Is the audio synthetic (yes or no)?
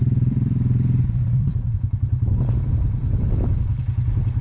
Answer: yes